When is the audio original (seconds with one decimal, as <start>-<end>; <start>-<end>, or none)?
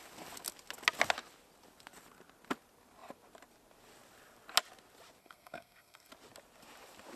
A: 0.0-5.2; 6.1-7.2